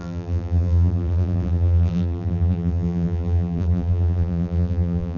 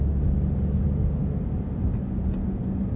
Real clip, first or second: second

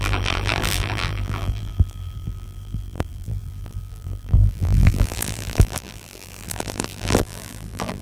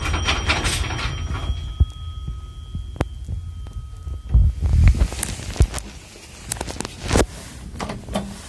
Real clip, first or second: second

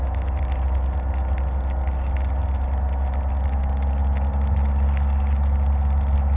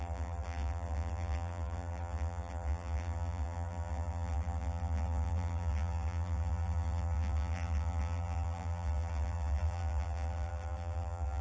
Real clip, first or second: first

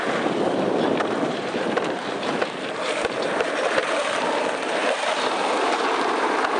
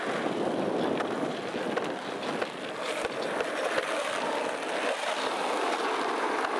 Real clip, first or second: second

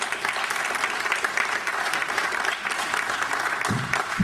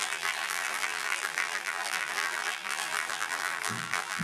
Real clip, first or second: first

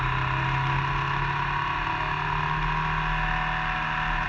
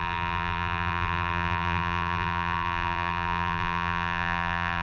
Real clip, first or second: first